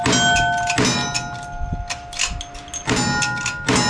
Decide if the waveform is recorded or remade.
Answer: recorded